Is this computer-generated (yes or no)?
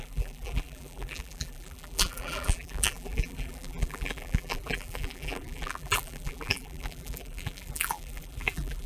yes